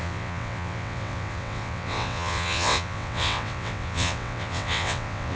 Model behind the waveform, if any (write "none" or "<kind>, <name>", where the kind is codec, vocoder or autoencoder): vocoder, WaveNeXt